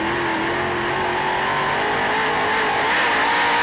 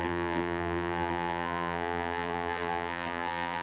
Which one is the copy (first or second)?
second